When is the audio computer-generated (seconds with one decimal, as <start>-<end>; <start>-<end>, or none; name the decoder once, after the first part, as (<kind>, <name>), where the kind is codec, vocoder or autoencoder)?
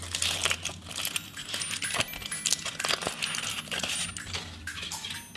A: none